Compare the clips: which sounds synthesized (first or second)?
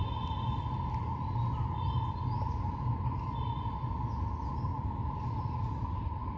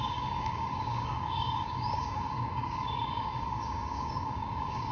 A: second